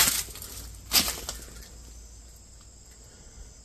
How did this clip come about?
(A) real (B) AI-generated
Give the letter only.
A